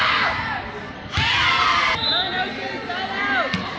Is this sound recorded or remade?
recorded